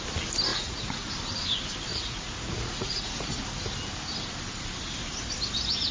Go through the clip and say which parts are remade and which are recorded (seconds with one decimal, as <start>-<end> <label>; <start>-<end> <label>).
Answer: 0.0-0.5 recorded; 0.5-1.1 remade; 1.1-1.9 recorded; 1.9-3.6 remade; 3.6-5.9 recorded